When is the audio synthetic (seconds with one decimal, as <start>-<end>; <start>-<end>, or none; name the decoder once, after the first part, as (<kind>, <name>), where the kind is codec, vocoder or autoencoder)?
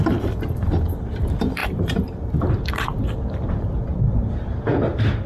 1.6-2.2 (vocoder, BigVGAN v2)